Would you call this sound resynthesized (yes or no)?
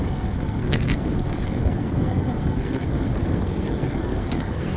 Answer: yes